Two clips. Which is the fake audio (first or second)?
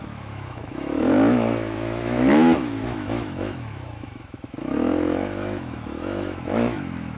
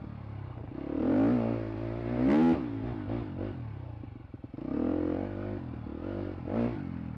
first